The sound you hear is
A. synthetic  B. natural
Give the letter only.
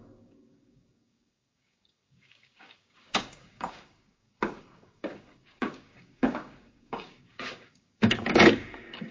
A